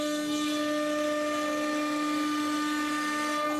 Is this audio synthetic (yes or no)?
no